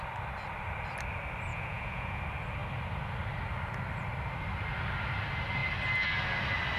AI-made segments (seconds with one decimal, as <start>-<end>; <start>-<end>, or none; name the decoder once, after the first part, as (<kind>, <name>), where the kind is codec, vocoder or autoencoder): 1.5-2.2 (vocoder, Vocos)